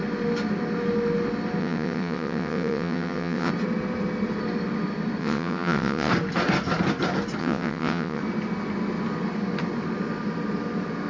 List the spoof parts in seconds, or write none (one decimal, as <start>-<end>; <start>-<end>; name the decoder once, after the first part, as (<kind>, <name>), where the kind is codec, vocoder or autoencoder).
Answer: 1.6-3.5 (vocoder, WaveNeXt); 5.2-6.1; 7.4-8.2